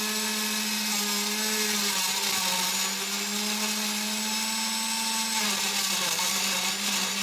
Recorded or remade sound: recorded